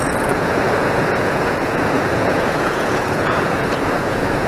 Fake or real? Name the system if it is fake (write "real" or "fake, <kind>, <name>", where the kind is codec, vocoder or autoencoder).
fake, vocoder, Vocos